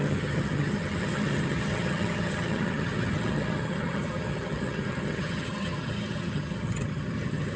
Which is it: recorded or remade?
remade